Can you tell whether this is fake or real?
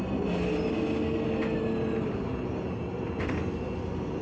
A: real